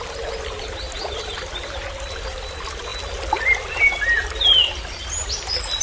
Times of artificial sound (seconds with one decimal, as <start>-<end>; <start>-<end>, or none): none